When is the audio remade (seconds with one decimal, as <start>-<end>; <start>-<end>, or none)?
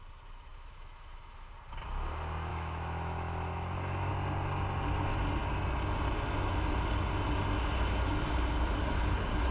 0.5-1.5; 2.5-4.1